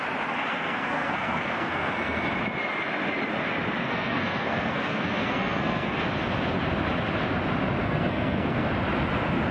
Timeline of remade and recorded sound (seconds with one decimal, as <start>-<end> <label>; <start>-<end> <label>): 0.0-0.5 recorded; 0.5-2.2 remade; 2.2-3.8 recorded; 3.8-6.0 remade; 6.0-7.8 recorded; 7.8-8.7 remade; 8.7-9.5 recorded